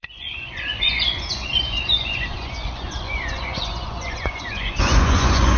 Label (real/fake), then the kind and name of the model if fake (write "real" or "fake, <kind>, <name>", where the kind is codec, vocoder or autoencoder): fake, vocoder, Vocos